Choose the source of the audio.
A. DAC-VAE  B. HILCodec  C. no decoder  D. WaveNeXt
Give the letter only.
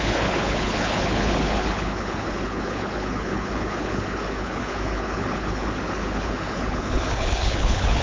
B